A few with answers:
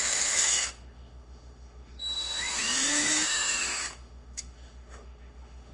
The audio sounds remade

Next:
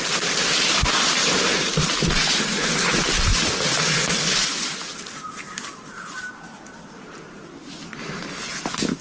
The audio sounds recorded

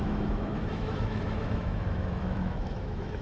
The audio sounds remade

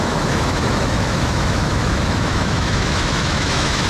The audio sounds remade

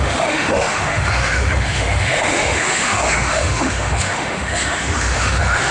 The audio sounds remade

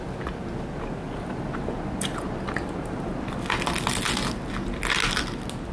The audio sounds recorded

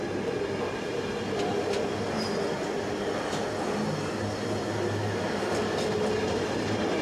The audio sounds recorded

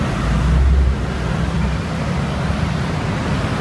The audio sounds recorded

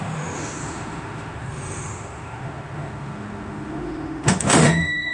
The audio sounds remade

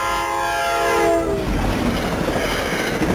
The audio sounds recorded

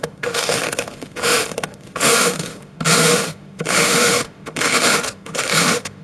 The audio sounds remade